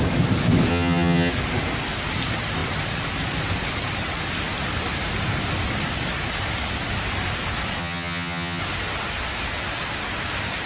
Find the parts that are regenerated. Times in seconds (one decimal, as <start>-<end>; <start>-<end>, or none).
0.7-1.3; 7.8-8.6